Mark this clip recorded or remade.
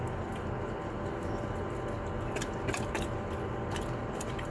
remade